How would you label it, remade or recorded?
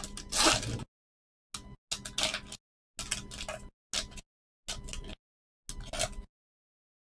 recorded